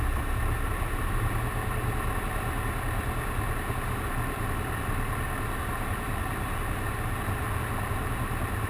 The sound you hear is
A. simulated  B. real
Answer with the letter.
B